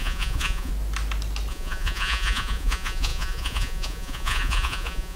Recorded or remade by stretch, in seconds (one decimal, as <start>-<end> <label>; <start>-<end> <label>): 0.0-0.7 remade; 0.7-1.5 recorded; 1.5-5.2 remade